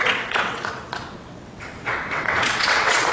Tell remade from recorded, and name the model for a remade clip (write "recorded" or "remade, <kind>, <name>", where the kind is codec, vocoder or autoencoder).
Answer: remade, vocoder, WaveNeXt